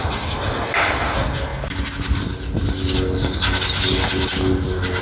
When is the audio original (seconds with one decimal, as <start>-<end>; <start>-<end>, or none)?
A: 0.0-5.0